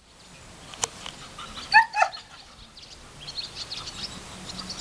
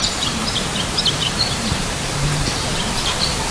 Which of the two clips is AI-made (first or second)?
second